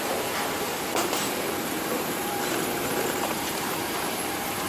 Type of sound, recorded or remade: remade